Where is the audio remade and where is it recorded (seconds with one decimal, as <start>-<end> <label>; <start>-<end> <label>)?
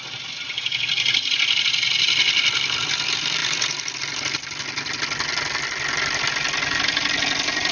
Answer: 0.0-7.7 recorded